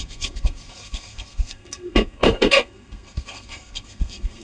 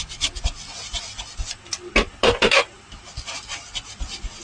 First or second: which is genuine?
second